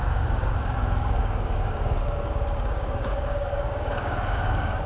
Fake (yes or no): yes